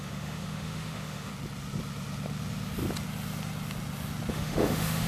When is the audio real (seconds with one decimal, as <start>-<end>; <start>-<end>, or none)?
1.3-4.3